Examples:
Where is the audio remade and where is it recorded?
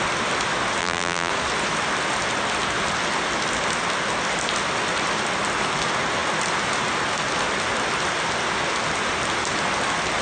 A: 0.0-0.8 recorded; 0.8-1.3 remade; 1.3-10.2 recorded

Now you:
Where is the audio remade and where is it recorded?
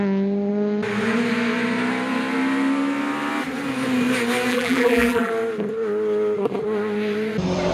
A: 0.0-4.5 recorded; 4.5-5.3 remade; 5.3-7.7 recorded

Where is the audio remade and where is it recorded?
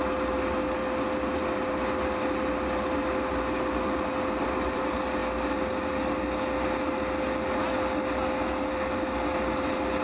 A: 0.0-0.8 remade; 0.8-4.4 recorded; 4.4-5.2 remade; 5.2-8.7 recorded; 8.7-10.0 remade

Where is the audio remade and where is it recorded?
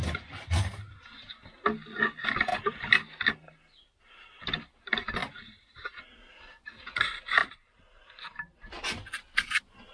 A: 0.0-5.2 recorded; 5.2-6.7 remade; 6.7-7.4 recorded; 7.4-8.7 remade; 8.7-9.9 recorded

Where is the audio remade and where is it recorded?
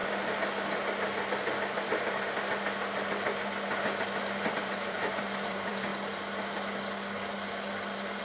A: 0.0-4.5 recorded; 4.5-5.9 remade; 5.9-8.2 recorded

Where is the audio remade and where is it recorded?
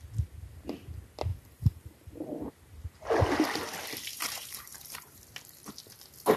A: 0.0-1.3 recorded; 1.3-2.5 remade; 2.5-4.1 recorded; 4.1-5.2 remade; 5.2-6.4 recorded